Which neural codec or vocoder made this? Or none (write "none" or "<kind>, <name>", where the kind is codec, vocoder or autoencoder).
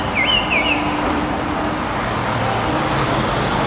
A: none